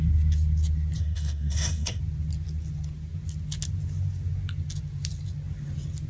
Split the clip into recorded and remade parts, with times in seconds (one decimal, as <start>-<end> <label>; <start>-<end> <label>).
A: 0.0-1.0 recorded; 1.0-2.0 remade; 2.0-6.1 recorded

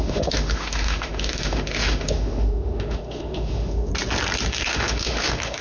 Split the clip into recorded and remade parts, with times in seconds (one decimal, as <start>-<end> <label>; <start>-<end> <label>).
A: 0.0-3.9 remade; 3.9-4.5 recorded; 4.5-5.6 remade

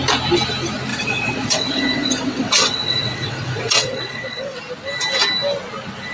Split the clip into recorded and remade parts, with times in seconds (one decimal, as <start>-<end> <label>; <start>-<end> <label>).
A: 0.0-0.9 recorded; 0.9-4.6 remade; 4.6-6.1 recorded

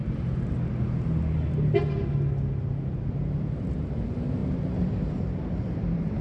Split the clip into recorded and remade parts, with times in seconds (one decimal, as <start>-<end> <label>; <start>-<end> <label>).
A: 0.0-6.2 recorded

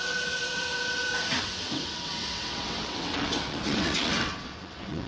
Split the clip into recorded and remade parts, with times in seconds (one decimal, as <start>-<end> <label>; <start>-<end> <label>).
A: 0.0-5.1 remade

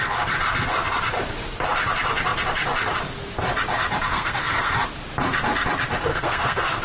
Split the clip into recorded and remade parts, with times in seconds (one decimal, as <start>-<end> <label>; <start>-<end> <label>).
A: 0.0-4.1 recorded; 4.1-4.7 remade; 4.7-6.1 recorded; 6.1-6.8 remade

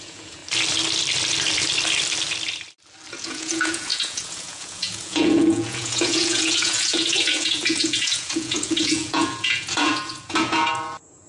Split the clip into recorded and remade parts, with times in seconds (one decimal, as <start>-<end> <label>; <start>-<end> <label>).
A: 0.0-0.4 remade; 0.4-3.1 recorded; 3.1-11.3 remade